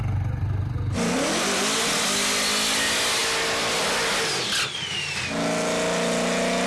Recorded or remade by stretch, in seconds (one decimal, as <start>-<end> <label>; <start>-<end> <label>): 0.0-6.7 recorded